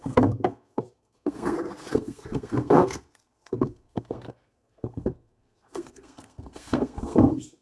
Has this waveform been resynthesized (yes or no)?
yes